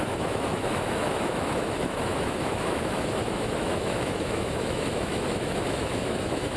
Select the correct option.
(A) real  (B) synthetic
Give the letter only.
B